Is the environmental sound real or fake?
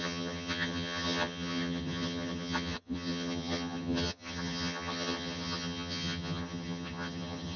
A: fake